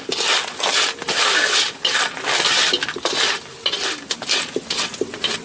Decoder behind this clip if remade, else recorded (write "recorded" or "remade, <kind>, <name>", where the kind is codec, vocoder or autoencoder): recorded